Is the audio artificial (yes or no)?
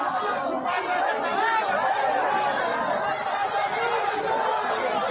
no